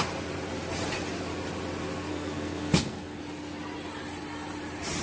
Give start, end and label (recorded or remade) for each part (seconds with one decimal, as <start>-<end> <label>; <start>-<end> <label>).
0.0-2.1 recorded; 2.1-3.2 remade; 3.2-5.0 recorded